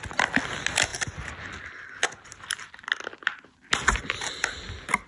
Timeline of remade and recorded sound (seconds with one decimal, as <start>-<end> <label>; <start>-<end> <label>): 0.0-5.1 recorded